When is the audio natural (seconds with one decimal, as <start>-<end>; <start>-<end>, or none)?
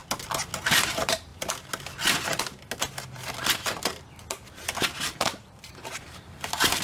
0.0-0.7; 1.3-4.8